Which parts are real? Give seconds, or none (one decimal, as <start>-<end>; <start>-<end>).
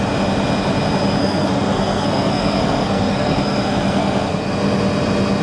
0.0-1.2; 4.4-5.4